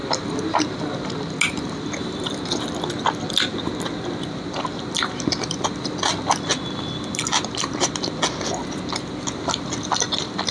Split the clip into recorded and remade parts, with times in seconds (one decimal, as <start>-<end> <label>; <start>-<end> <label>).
0.0-10.5 recorded